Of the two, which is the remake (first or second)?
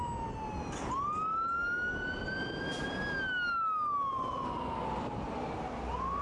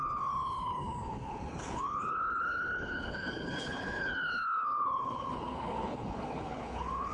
second